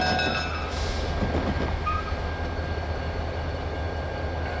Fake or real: real